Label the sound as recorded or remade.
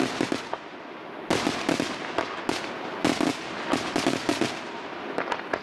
recorded